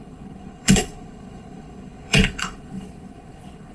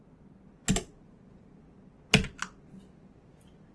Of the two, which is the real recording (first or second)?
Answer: second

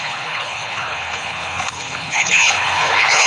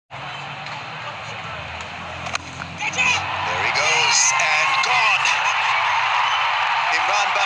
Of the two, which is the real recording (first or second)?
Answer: second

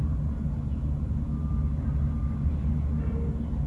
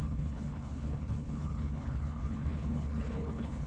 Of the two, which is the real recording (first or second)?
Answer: first